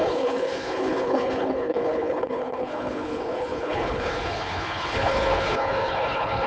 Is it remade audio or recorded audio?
remade